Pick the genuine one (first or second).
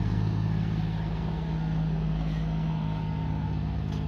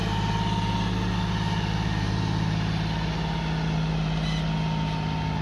second